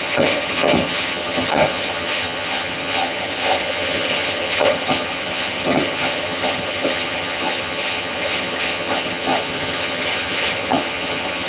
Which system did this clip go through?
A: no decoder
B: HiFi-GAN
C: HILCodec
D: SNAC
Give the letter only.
B